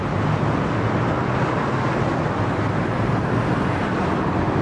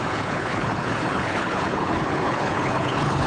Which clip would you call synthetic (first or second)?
second